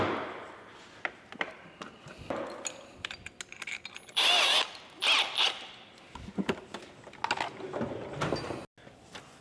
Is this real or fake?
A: real